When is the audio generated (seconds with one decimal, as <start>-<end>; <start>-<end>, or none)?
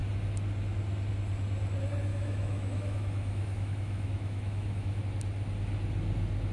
2.1-5.0